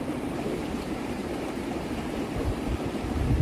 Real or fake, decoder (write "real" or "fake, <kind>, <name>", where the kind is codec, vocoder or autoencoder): real